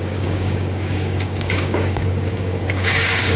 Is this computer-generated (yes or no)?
yes